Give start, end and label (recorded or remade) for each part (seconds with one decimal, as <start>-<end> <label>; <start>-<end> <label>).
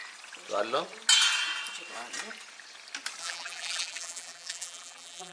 0.0-3.2 recorded; 3.2-5.3 remade